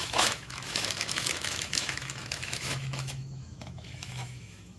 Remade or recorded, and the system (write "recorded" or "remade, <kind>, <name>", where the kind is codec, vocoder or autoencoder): remade, autoencoder, DAC-VAE